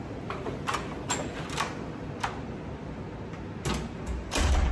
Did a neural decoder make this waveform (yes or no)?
no